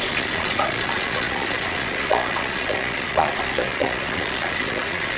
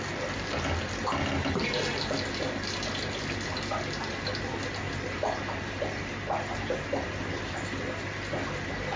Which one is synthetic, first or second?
first